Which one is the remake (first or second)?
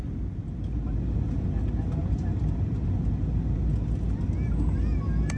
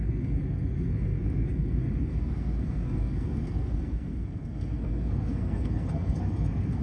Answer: second